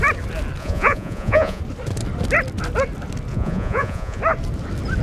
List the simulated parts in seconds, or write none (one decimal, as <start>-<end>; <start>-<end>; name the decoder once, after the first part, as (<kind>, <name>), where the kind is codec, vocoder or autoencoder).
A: 0.6-1.6 (vocoder, Vocos); 3.3-4.2